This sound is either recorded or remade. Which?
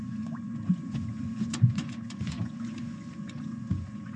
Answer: remade